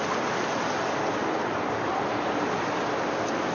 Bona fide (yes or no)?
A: yes